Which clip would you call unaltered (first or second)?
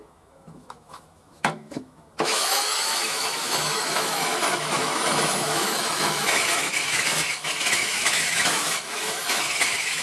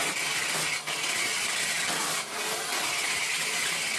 second